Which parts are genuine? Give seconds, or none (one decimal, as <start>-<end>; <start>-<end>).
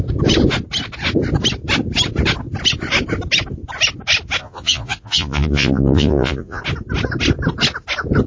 0.0-4.4; 6.6-8.3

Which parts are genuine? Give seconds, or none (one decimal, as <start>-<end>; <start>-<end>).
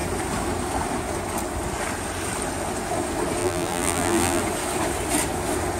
0.0-3.4; 4.4-5.8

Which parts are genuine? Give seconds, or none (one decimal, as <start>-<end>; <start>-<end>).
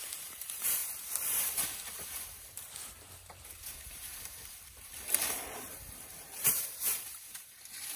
none